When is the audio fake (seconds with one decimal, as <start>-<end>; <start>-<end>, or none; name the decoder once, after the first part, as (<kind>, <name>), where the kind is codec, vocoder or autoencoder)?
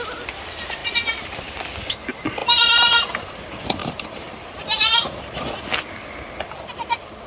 2.4-3.2 (vocoder, BigVGAN v2); 3.8-5.2